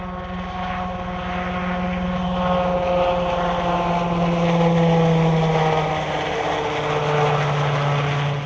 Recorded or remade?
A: recorded